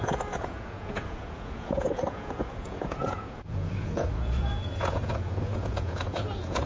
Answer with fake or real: fake